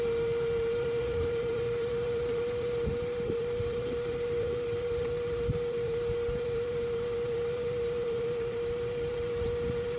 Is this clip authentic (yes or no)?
no